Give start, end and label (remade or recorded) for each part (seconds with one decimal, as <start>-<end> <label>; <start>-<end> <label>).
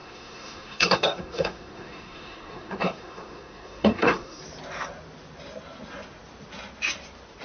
0.0-4.4 remade; 4.4-7.4 recorded